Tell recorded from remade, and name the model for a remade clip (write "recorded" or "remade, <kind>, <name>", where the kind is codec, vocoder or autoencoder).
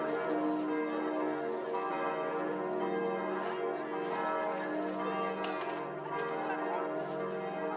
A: recorded